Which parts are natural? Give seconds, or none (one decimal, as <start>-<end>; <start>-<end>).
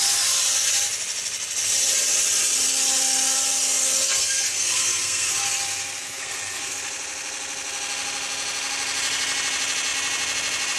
0.0-4.1; 5.3-6.0; 6.8-10.8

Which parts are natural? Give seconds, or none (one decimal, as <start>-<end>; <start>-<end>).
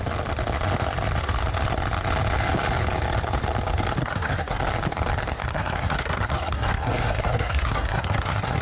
0.0-4.0; 4.6-5.4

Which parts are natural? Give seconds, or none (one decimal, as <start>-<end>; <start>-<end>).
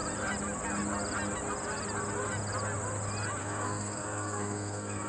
0.0-3.4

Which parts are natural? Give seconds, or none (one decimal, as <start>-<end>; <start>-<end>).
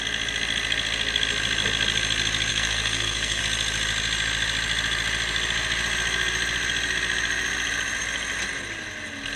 0.0-2.5; 3.4-9.4